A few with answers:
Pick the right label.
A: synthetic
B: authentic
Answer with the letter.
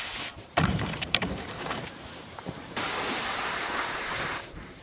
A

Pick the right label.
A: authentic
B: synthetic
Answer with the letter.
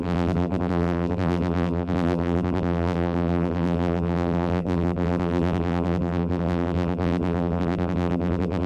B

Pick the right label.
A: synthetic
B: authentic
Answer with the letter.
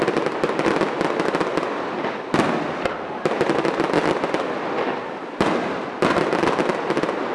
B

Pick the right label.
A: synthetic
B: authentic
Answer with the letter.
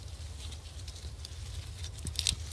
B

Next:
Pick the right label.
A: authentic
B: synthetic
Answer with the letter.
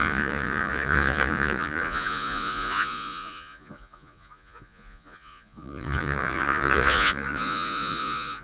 B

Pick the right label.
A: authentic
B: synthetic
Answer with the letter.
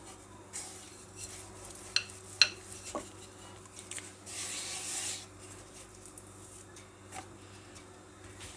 A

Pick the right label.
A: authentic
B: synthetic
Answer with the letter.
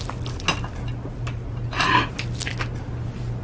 A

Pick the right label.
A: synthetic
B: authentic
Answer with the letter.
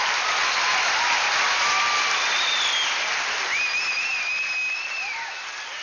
B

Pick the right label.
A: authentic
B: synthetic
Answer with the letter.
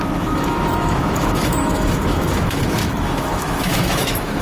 B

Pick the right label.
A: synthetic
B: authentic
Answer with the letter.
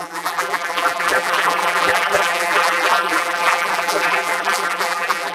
A